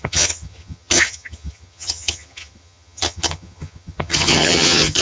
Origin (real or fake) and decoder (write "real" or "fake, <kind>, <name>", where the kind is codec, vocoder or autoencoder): fake, vocoder, HiFi-GAN